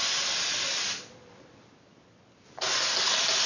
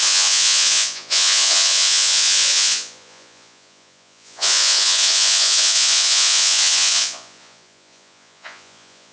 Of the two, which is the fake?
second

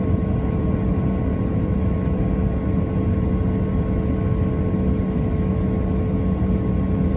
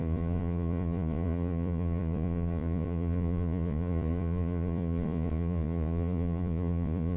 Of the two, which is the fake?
second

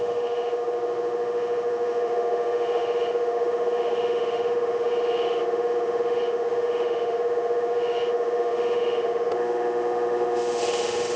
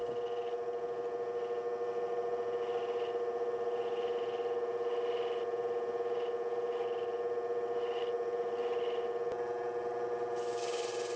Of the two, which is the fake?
first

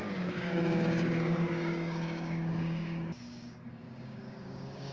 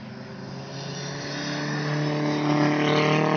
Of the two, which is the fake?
first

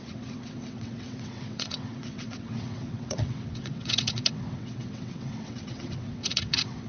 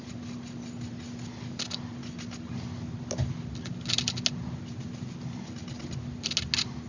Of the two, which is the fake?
first